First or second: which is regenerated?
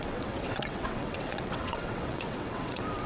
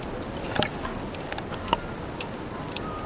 first